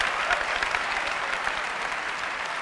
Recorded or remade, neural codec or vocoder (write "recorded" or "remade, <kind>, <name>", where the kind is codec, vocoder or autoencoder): remade, vocoder, BigVGAN v2